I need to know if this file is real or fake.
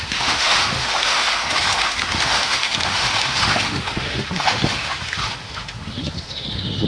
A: fake